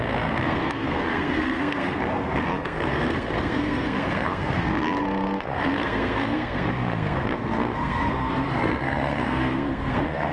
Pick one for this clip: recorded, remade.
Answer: remade